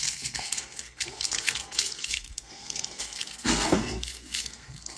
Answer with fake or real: fake